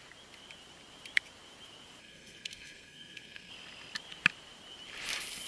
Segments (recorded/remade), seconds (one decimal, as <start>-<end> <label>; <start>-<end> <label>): 0.0-2.0 recorded; 2.0-3.5 remade; 3.5-5.5 recorded